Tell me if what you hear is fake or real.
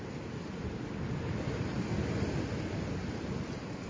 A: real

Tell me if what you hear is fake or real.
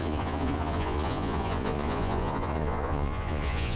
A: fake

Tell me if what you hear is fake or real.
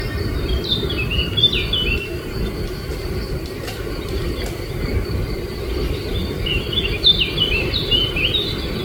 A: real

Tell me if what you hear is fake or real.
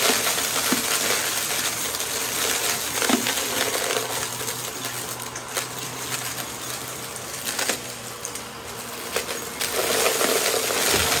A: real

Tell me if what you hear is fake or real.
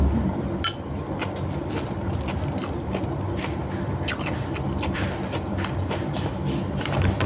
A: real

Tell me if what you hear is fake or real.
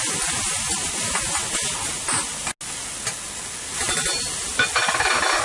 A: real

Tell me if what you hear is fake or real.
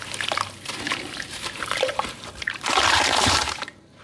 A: fake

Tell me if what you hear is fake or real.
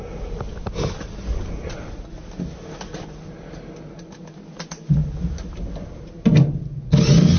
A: real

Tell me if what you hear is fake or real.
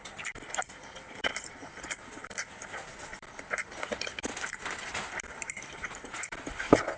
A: fake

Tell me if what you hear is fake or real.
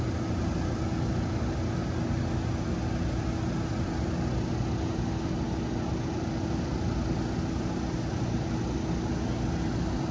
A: real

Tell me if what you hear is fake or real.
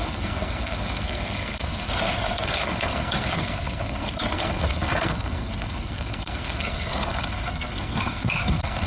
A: fake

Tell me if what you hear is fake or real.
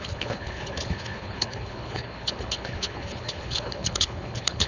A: fake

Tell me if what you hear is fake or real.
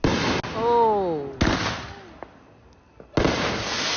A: real